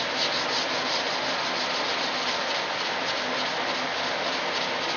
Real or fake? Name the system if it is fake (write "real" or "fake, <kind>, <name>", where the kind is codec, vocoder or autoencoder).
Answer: real